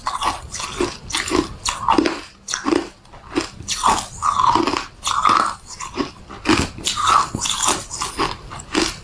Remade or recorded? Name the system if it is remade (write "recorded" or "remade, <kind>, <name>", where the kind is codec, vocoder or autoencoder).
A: recorded